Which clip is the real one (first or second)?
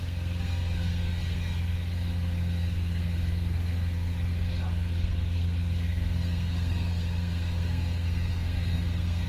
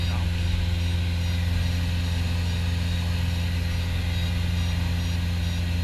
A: second